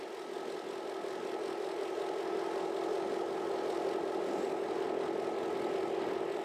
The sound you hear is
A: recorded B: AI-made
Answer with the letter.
A